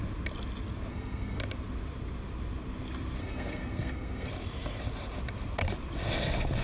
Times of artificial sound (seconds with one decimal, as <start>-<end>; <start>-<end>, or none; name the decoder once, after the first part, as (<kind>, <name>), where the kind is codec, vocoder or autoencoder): 0.9-1.4 (codec, SNAC); 3.2-4.3